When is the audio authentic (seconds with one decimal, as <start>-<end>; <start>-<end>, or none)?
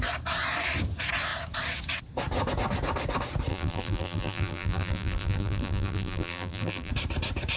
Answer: 0.0-3.5; 6.9-7.6